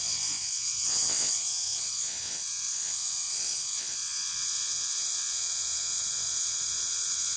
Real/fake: fake